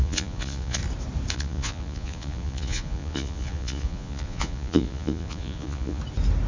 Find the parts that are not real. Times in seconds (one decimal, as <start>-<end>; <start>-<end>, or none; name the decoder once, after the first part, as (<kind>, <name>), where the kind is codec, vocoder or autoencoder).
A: 0.0-0.8 (vocoder, Vocos); 1.3-6.0